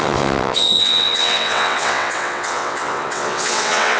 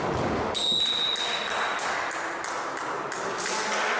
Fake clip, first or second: first